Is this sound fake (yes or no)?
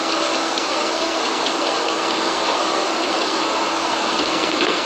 yes